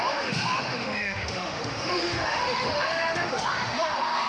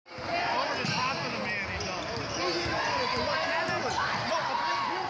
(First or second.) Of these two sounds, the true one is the second